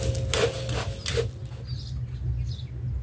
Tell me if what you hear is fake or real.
real